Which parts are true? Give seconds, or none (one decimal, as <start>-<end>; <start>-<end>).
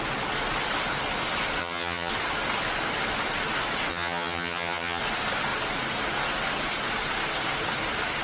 0.0-1.6; 2.1-3.9; 5.0-8.2